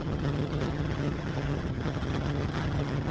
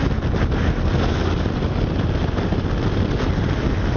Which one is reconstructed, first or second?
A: first